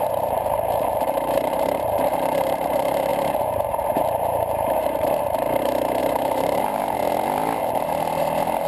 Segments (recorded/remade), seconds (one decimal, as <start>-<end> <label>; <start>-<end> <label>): 0.0-7.0 remade; 7.0-8.7 recorded